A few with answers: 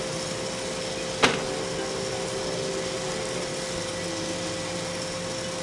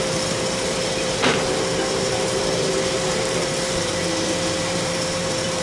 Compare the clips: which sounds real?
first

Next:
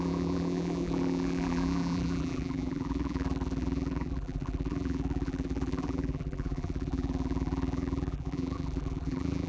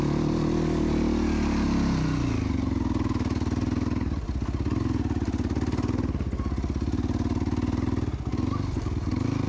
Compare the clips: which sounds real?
second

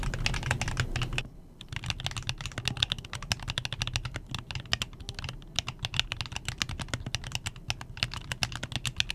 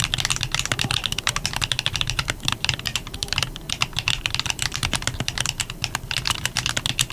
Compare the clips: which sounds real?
first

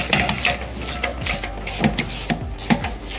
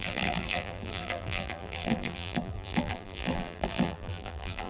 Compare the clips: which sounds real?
first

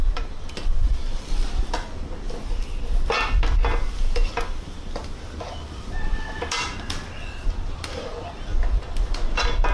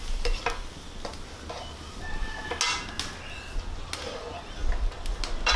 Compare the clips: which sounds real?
second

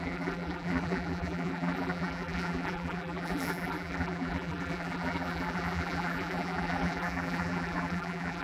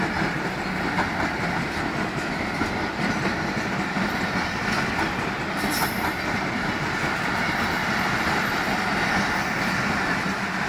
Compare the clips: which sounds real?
second